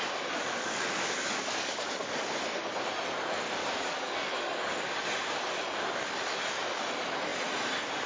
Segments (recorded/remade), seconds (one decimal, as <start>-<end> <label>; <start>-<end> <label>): 0.0-0.6 recorded; 0.6-2.3 remade; 2.3-3.6 recorded; 3.6-4.9 remade; 4.9-8.1 recorded

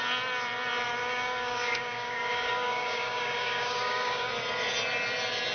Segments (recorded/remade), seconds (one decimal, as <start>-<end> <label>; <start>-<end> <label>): 0.0-1.0 recorded; 1.0-4.3 remade; 4.3-5.5 recorded

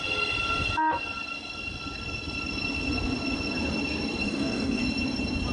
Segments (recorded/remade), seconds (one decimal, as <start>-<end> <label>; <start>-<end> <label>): 0.0-4.2 recorded; 4.2-4.8 remade; 4.8-5.5 recorded

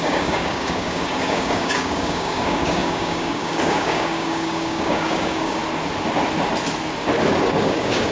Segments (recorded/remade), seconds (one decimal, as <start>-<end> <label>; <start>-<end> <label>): 0.0-5.6 remade; 5.6-7.6 recorded; 7.6-8.1 remade

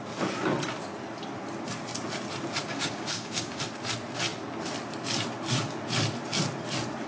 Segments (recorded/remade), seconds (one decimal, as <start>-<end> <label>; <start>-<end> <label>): 0.0-2.7 recorded; 2.7-3.6 remade; 3.6-7.1 recorded